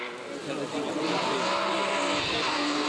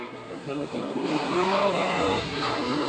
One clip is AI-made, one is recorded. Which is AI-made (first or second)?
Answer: second